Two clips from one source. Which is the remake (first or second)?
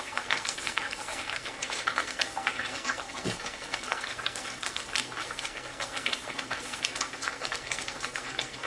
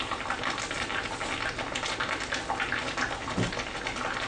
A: first